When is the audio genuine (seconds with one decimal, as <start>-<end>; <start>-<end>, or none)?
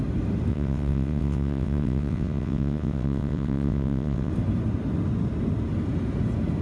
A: 0.0-0.5; 4.3-6.6